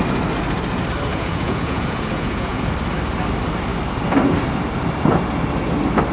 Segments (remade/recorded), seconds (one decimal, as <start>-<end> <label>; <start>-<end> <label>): 0.0-1.1 recorded; 1.1-2.7 remade; 2.7-6.1 recorded